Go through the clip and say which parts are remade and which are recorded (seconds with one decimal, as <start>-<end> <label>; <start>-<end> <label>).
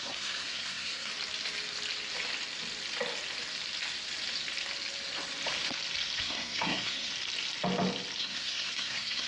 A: 0.0-1.1 remade; 1.1-6.2 recorded; 6.2-7.1 remade; 7.1-8.2 recorded; 8.2-9.3 remade